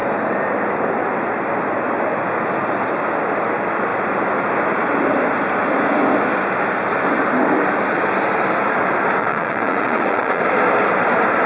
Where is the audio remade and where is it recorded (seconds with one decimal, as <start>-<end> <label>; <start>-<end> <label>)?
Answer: 0.0-9.2 recorded; 9.2-10.4 remade; 10.4-11.5 recorded